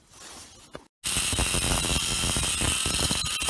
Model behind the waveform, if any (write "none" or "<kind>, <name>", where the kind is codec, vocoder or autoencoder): none